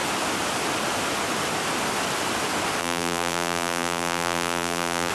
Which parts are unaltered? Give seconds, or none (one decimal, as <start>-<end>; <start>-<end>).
0.0-2.8